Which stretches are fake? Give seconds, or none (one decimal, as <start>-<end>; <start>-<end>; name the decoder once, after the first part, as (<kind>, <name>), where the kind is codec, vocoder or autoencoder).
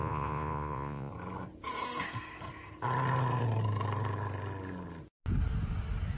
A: 0.0-1.1 (vocoder, Vocos)